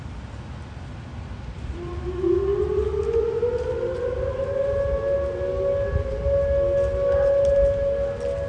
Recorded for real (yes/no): yes